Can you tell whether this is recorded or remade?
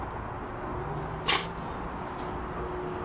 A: recorded